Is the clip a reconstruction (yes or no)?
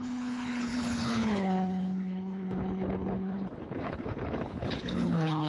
yes